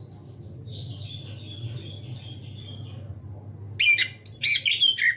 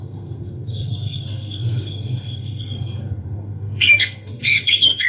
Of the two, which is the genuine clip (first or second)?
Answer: first